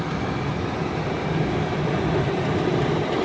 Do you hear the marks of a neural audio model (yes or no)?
no